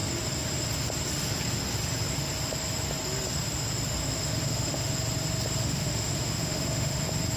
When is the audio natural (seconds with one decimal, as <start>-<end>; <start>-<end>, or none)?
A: 0.0-4.0; 4.9-5.6; 7.0-7.4

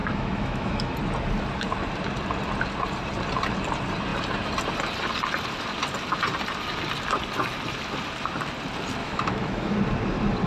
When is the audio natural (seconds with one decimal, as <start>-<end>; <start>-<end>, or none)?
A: 0.9-9.0; 9.7-10.5

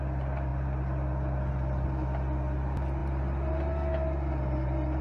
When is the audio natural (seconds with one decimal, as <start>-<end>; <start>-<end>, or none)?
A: 0.0-5.0